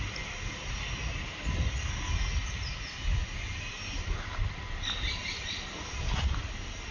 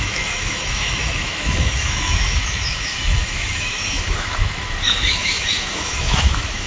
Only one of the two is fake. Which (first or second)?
second